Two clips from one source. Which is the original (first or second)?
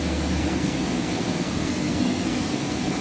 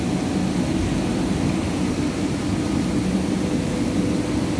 second